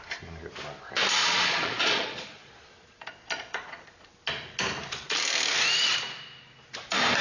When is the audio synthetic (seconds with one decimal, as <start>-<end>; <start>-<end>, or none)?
1.2-4.1